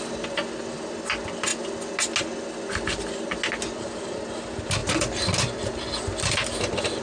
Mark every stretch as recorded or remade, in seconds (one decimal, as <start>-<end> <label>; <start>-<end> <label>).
0.0-7.0 recorded